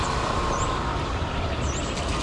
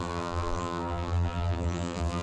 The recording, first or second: first